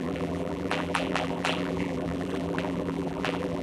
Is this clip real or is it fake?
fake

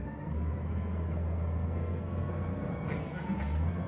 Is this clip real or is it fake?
fake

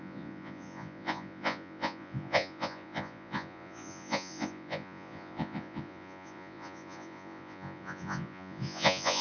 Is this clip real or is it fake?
fake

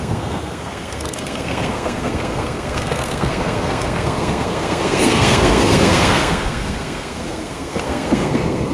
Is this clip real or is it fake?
fake